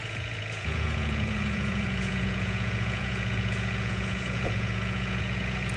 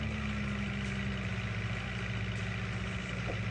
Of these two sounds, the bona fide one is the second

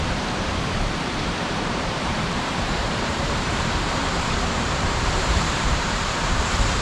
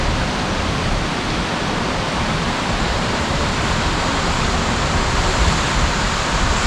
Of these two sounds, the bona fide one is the second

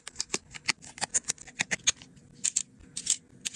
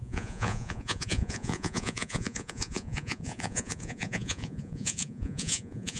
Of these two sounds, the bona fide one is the first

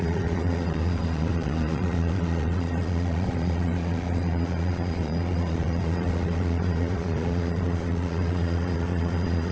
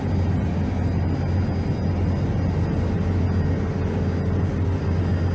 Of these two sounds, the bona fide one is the second